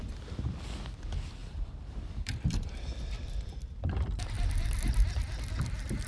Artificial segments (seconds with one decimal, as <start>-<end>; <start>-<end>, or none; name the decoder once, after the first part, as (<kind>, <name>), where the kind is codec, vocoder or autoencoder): 1.4-4.2 (vocoder, BigVGAN v2)